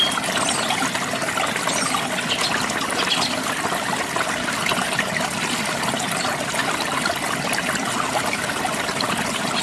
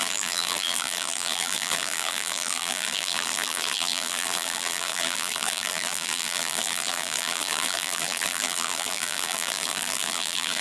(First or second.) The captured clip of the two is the first